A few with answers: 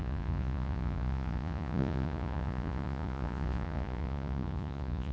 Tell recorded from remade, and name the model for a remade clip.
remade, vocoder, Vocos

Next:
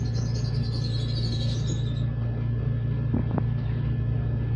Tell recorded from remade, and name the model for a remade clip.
recorded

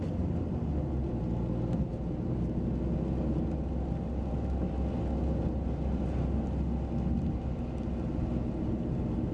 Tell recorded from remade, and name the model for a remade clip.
recorded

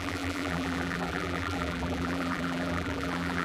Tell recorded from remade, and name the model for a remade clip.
remade, vocoder, BigVGAN v2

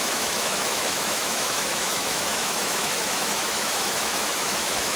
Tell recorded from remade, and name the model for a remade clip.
remade, autoencoder, DAC-VAE